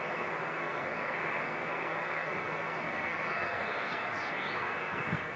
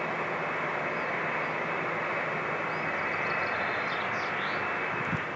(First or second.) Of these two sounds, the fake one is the first